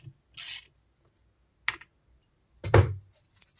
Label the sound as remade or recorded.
recorded